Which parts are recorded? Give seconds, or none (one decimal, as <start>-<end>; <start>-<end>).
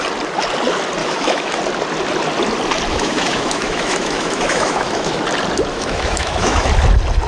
0.0-1.0; 1.6-2.9; 5.2-5.7; 6.7-7.3